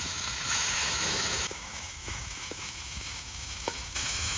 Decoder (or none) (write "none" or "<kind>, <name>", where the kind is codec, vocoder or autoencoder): autoencoder, DAC-VAE